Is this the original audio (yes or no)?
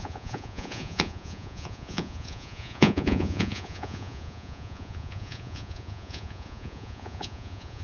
no